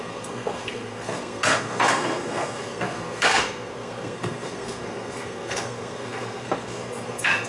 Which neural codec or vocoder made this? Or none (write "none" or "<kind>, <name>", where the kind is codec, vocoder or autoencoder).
codec, SNAC